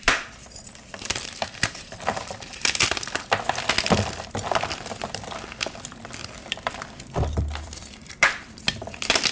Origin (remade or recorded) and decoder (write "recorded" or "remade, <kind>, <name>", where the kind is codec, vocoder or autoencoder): remade, vocoder, BigVGAN v2